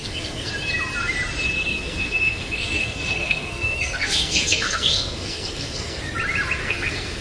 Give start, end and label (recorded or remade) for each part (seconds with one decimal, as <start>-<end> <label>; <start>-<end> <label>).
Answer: 0.0-0.5 remade; 0.5-1.7 recorded; 1.7-6.0 remade; 6.0-6.6 recorded; 6.6-7.2 remade